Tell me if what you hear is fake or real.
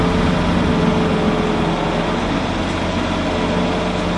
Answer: real